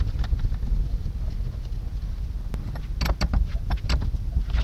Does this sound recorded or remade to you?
recorded